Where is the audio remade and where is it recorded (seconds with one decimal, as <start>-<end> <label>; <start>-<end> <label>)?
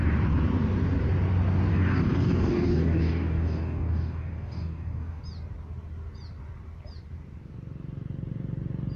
0.0-1.7 recorded; 1.7-5.2 remade; 5.2-9.0 recorded